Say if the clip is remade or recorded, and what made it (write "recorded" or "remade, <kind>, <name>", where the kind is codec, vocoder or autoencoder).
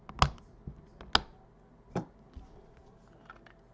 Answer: recorded